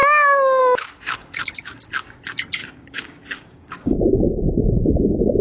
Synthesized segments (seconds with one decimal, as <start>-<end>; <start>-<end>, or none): 2.6-5.0